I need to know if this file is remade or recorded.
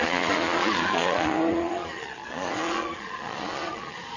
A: remade